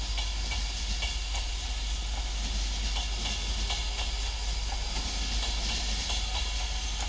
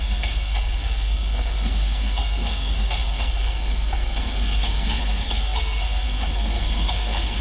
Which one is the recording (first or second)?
first